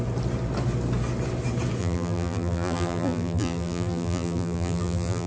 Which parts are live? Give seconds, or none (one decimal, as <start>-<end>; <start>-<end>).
0.0-1.8